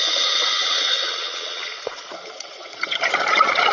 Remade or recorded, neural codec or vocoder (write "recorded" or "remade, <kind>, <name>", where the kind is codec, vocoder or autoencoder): remade, vocoder, Vocos